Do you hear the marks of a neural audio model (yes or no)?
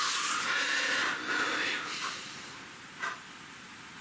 no